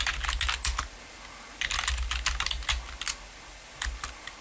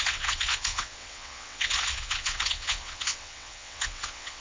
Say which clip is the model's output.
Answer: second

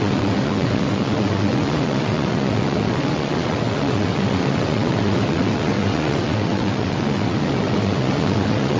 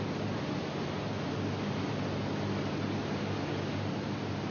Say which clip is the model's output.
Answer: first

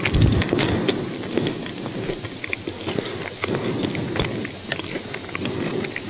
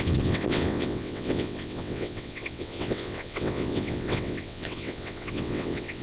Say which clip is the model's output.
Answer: second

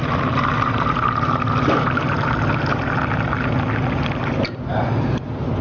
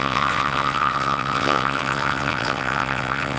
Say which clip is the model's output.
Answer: second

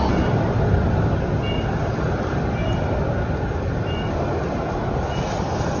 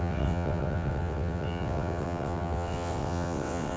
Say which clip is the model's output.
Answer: second